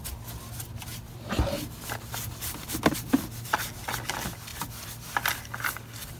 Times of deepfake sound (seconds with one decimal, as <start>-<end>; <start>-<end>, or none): none